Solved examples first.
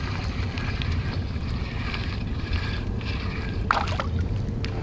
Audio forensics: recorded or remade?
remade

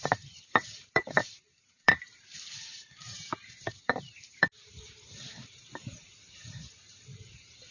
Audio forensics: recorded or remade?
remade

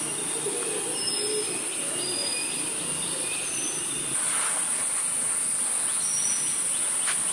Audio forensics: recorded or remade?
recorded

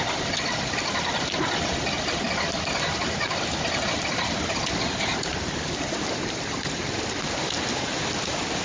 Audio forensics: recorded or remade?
remade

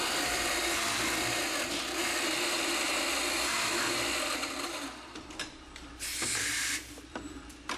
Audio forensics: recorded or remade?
remade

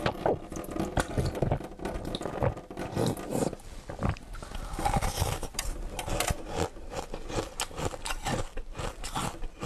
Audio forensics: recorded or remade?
recorded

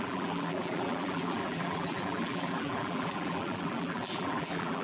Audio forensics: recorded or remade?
remade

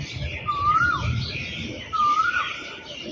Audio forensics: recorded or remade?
remade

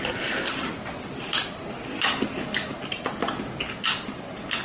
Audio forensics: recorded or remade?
recorded